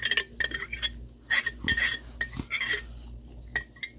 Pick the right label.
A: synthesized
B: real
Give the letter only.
B